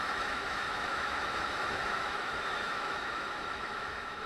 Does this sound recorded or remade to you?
remade